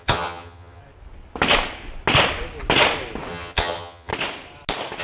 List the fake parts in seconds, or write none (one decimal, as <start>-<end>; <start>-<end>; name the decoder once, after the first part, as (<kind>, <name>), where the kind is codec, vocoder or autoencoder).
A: 0.0-0.8 (vocoder, HiFi-GAN); 3.3-4.1